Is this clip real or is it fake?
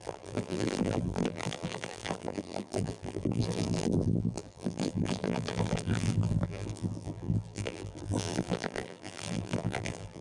fake